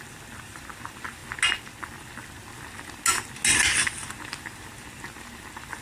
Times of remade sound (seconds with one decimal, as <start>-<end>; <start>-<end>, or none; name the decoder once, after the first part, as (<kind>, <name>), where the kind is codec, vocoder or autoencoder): none